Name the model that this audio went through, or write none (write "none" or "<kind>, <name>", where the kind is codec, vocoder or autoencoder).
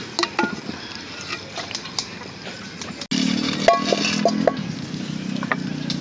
none